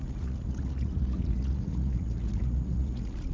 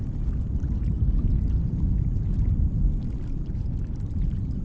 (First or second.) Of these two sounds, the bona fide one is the second